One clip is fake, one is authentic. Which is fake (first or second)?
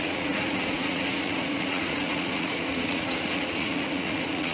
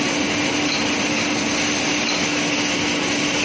first